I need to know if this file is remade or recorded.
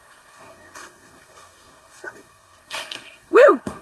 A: remade